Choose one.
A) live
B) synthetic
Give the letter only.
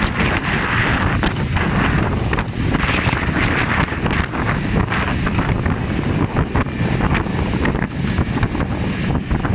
A